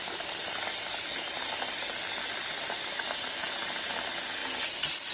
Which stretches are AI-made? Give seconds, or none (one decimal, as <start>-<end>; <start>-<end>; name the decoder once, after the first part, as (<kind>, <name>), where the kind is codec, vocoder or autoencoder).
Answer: none